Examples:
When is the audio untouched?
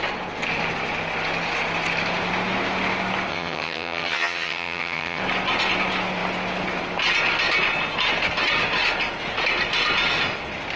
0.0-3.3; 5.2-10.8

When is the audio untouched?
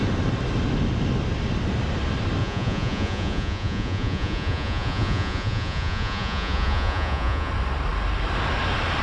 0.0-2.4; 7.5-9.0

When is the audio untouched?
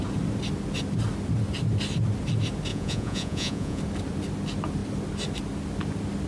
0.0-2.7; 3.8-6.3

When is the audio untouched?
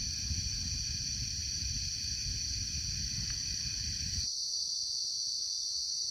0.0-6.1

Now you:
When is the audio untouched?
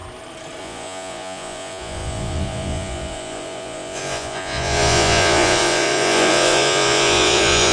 0.0-0.6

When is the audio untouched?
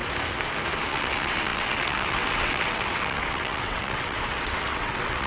0.0-0.9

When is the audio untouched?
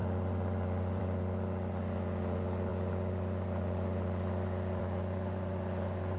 0.0-6.2